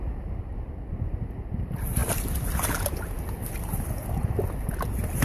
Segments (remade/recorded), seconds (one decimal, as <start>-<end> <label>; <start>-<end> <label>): 0.0-5.2 recorded